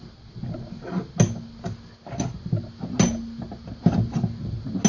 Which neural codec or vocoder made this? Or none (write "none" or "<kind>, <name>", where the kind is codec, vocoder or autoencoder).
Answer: none